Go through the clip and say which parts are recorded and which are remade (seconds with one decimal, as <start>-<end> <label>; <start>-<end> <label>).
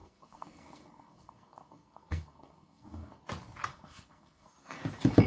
0.0-3.2 remade; 3.2-3.7 recorded; 3.7-4.8 remade; 4.8-5.3 recorded